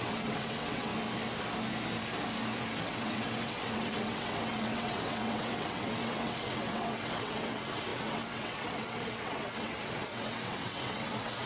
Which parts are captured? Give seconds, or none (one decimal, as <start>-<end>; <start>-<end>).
0.9-2.8